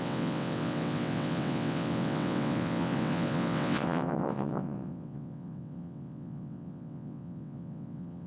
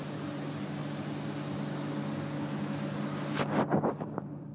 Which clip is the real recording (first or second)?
second